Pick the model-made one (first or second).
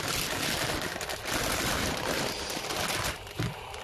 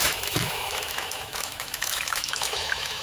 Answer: second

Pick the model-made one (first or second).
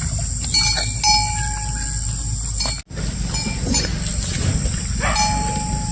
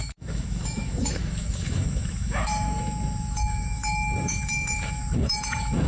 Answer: second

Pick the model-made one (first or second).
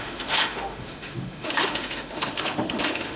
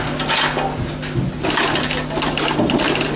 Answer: first